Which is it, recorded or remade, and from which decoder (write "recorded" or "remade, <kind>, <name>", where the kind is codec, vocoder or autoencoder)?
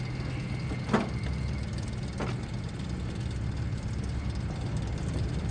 recorded